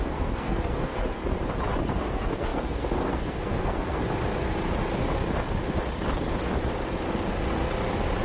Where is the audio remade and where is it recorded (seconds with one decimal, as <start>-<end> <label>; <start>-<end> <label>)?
0.0-1.2 remade; 1.2-1.9 recorded; 1.9-4.0 remade; 4.0-8.2 recorded